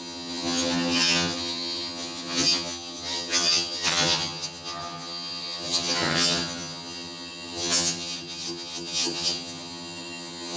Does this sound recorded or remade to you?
remade